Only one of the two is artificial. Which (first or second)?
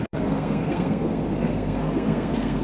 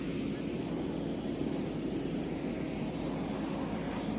first